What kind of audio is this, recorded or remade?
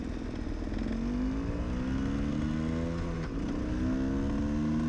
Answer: recorded